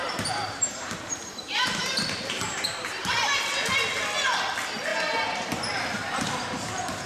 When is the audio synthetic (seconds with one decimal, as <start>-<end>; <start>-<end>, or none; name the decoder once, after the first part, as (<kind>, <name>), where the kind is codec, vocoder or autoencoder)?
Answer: 0.0-3.3 (vocoder, BigVGAN v2); 4.9-7.1